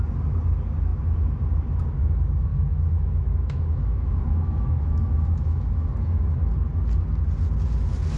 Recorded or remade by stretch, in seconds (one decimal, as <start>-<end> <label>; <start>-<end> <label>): 0.0-2.5 recorded; 2.5-6.4 remade; 6.4-8.2 recorded